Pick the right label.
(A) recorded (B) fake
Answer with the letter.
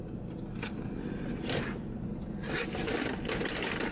A